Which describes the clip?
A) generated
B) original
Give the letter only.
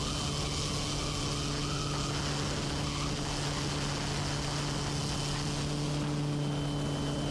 B